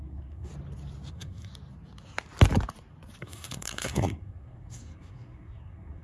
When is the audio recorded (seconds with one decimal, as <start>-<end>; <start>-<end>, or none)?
0.5-1.1; 1.5-3.2